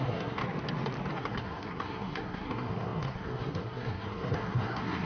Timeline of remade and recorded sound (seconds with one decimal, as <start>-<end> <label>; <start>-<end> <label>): 0.0-0.4 remade; 0.4-1.1 recorded; 1.1-5.1 remade